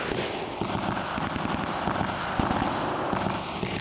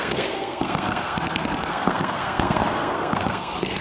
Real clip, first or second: first